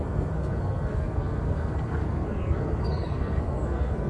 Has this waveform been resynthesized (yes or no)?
yes